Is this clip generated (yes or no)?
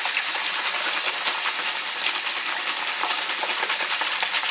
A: no